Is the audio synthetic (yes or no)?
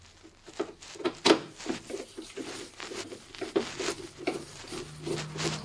no